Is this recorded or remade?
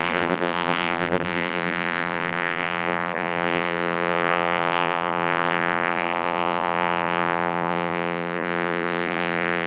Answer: remade